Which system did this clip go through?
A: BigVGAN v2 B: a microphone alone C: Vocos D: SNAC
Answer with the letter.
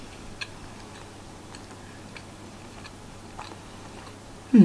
A